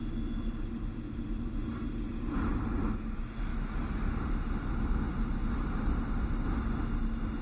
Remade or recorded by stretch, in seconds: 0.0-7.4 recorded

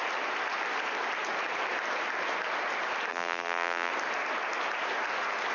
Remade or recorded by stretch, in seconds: 0.0-3.1 recorded; 3.1-3.9 remade; 3.9-5.5 recorded

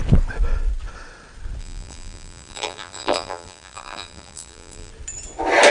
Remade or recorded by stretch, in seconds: 0.0-1.6 recorded; 1.6-4.9 remade; 4.9-5.7 recorded

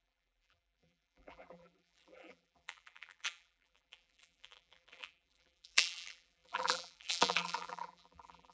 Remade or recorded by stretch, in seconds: 0.0-8.5 remade

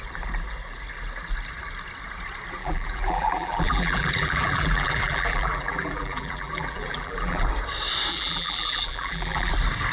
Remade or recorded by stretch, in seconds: 0.0-2.6 recorded; 2.6-7.5 remade; 7.5-8.1 recorded; 8.1-9.5 remade; 9.5-9.9 recorded

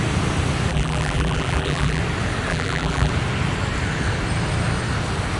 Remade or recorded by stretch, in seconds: 0.0-0.7 recorded; 0.7-2.0 remade; 2.0-2.5 recorded; 2.5-3.1 remade; 3.1-5.4 recorded